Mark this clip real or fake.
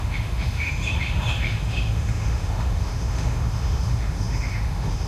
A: fake